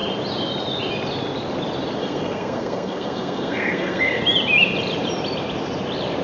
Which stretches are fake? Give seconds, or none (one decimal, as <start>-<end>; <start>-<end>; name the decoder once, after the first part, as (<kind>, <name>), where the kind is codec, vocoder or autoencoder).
2.0-4.2 (codec, SNAC)